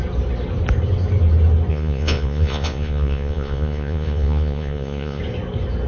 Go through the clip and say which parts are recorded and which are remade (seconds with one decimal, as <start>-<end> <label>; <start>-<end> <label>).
0.0-1.7 recorded; 1.7-5.2 remade; 5.2-5.9 recorded